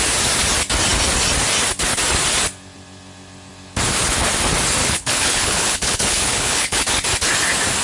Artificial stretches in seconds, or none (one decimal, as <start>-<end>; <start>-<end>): 4.8-6.8